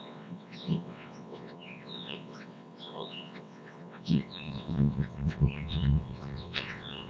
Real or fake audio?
fake